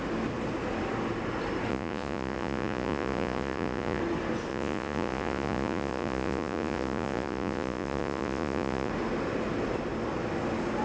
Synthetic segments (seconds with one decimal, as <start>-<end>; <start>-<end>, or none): 1.7-4.0; 4.5-8.9